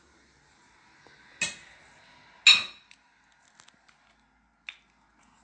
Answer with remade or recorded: recorded